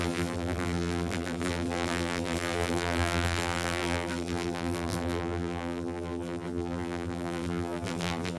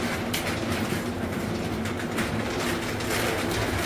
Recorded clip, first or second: second